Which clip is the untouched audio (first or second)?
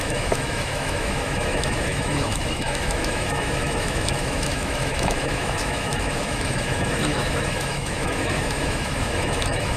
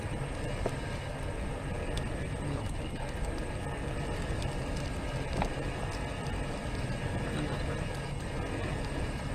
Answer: second